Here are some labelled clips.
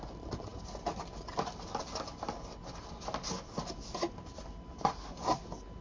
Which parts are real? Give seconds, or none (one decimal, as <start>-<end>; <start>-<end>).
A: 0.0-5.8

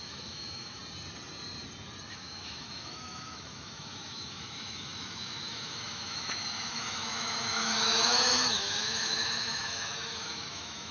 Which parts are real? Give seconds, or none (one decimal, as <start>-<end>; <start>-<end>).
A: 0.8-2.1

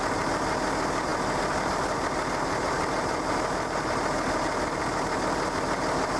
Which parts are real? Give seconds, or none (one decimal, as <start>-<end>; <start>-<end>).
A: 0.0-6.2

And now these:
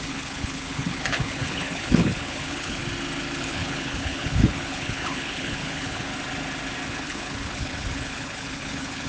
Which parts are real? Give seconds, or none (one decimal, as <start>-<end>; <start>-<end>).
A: 2.8-3.4; 6.1-6.9

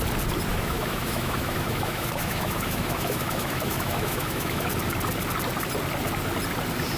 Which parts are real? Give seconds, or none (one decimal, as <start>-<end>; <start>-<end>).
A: 0.0-0.5; 4.7-7.0

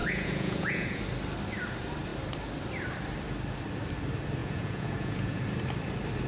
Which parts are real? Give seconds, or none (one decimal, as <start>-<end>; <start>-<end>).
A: 1.0-4.4; 5.4-6.3

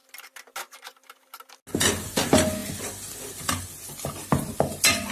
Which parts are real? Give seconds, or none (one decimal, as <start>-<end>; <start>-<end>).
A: 0.0-5.1